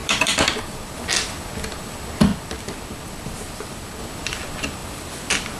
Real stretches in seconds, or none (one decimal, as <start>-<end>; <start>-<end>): 1.1-2.3; 4.0-4.8